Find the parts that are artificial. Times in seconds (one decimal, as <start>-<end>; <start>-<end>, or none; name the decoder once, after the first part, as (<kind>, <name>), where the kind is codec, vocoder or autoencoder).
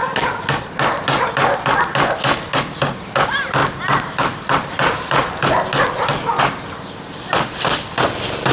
none